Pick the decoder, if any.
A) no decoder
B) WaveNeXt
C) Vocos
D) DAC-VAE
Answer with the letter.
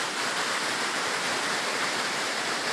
A